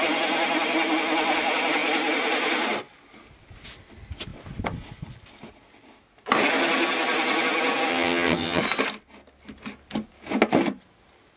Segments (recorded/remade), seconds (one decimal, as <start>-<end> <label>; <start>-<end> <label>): 0.0-7.9 recorded; 7.9-8.6 remade; 8.6-11.4 recorded

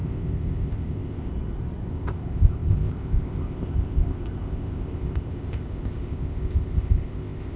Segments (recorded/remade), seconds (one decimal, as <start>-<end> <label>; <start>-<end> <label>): 0.0-1.3 remade; 1.3-1.9 recorded; 1.9-7.6 remade

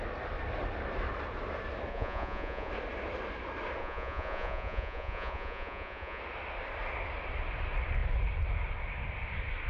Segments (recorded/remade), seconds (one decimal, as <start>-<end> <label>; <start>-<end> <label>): 0.0-1.9 recorded; 1.9-2.7 remade; 2.7-3.8 recorded; 3.8-6.2 remade; 6.2-9.7 recorded

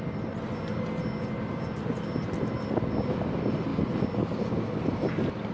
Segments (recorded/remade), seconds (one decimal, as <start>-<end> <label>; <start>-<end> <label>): 0.0-5.5 recorded

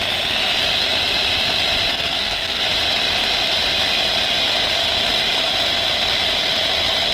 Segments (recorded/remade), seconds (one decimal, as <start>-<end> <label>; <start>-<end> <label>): 0.0-1.9 recorded; 1.9-2.6 remade; 2.6-7.1 recorded

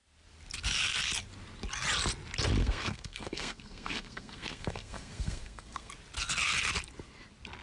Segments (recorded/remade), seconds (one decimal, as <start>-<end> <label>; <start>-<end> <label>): 0.0-2.6 recorded; 2.6-5.9 remade; 5.9-7.6 recorded

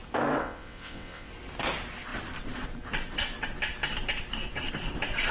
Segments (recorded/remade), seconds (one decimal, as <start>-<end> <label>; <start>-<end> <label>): 0.0-0.4 recorded; 0.4-1.3 remade; 1.3-5.3 recorded